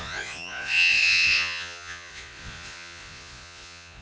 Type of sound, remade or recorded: remade